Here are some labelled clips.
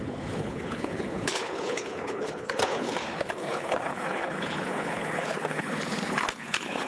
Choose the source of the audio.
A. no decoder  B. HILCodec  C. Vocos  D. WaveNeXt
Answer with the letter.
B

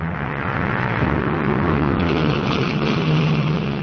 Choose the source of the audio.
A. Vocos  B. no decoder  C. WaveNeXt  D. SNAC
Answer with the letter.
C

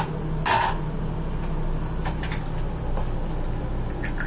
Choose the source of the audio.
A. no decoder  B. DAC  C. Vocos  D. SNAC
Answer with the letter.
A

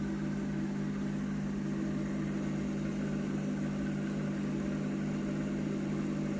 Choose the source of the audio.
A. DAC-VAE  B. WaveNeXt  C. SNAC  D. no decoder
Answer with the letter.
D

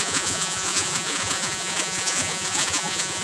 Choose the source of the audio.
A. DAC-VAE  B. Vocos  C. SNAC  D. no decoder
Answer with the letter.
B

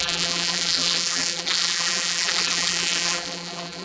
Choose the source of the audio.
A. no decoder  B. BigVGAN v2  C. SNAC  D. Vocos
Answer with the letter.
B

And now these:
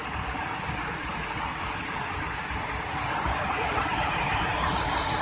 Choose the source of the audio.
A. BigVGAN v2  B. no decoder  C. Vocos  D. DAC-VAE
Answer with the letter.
B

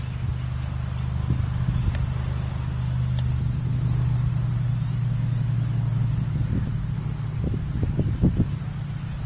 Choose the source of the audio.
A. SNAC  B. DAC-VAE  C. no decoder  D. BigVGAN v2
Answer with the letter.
C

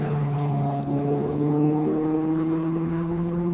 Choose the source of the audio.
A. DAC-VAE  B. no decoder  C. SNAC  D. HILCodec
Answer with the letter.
D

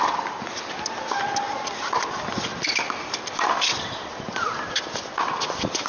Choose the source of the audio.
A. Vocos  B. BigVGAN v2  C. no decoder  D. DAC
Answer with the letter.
C